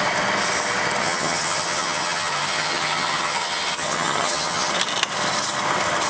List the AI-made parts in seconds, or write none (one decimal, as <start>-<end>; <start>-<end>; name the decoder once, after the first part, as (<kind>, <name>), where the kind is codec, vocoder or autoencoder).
1.0-4.7 (vocoder, HiFi-GAN)